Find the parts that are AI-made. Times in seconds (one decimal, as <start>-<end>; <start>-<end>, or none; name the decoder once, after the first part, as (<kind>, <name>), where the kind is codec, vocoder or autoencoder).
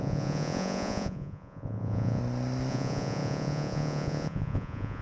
0.0-2.2 (vocoder, Vocos); 2.7-5.0